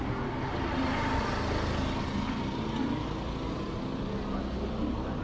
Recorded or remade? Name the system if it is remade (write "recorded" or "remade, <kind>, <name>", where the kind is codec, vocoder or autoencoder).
recorded